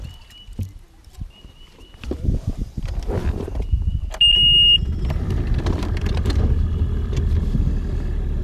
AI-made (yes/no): no